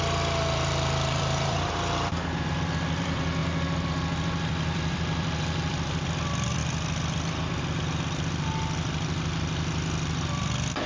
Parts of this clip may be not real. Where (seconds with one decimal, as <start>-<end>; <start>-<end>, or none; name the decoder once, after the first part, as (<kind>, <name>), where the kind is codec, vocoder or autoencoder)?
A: 0.0-10.9 (vocoder, BigVGAN v2)